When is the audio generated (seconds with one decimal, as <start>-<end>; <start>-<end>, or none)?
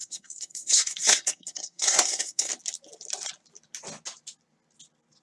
0.0-2.5